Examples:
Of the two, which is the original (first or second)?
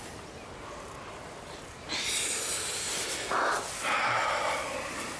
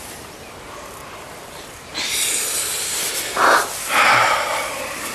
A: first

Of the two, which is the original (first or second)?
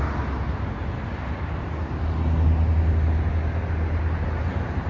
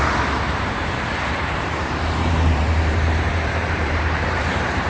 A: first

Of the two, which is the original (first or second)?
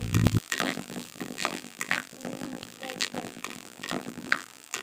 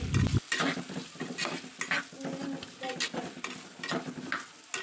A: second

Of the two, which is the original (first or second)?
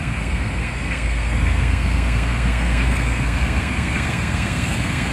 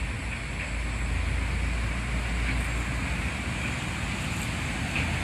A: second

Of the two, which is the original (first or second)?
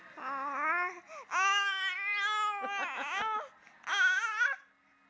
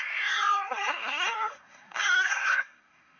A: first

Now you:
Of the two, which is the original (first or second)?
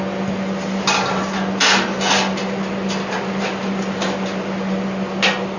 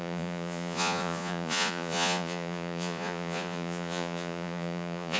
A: first